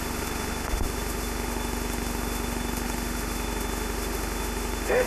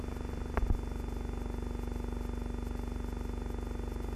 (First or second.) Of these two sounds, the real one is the second